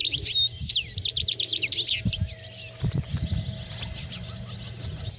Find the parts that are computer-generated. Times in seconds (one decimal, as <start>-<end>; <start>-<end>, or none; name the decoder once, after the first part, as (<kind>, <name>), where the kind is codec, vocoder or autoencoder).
none